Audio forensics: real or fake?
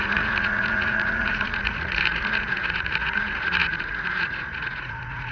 fake